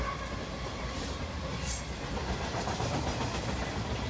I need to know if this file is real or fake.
real